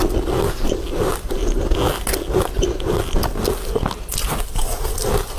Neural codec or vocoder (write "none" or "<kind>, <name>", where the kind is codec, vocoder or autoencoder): none